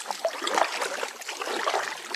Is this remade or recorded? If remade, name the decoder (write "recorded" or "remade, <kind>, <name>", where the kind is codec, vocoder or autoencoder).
recorded